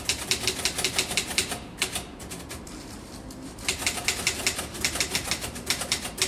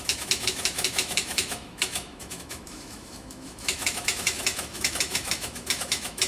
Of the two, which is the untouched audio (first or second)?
first